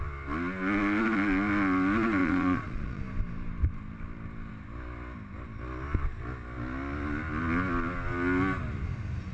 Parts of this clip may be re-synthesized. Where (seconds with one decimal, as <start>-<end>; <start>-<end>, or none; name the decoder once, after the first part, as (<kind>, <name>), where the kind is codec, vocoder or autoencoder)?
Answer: 2.2-3.0 (vocoder, Vocos)

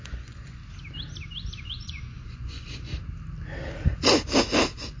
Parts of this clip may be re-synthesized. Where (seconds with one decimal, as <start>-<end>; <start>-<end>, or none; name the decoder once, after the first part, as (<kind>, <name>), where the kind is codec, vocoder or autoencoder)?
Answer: 0.0-0.6 (vocoder, Vocos); 1.6-2.9; 4.4-5.0

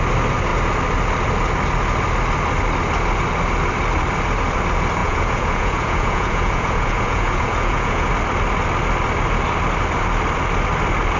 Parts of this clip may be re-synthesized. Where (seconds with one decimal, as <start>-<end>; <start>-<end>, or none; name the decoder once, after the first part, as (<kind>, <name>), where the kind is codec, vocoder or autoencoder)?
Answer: 5.0-8.1 (vocoder, Vocos)

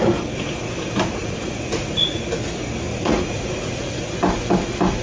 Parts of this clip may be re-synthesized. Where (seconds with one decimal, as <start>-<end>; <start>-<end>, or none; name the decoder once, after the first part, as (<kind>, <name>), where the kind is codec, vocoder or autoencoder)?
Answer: 1.2-2.2 (vocoder, Vocos); 2.9-3.9